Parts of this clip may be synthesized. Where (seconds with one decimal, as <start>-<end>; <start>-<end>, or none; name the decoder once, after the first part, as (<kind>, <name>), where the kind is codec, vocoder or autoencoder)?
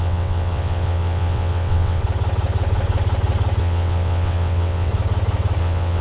0.0-2.0 (vocoder, WaveNeXt); 3.6-4.9; 5.6-6.0